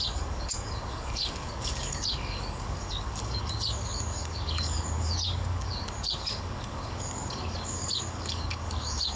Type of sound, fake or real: fake